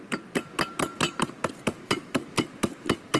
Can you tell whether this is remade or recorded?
recorded